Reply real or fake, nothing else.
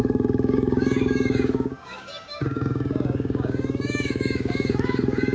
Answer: fake